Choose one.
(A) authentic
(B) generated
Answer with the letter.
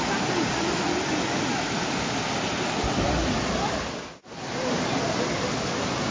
A